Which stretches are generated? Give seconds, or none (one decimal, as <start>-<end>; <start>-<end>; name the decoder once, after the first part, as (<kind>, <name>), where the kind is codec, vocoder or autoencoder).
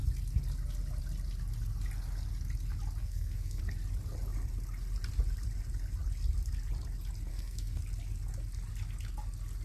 3.0-3.6 (codec, SNAC); 7.3-7.8